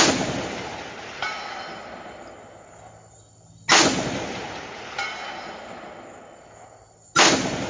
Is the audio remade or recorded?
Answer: recorded